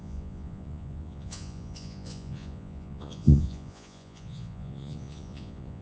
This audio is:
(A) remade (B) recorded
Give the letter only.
A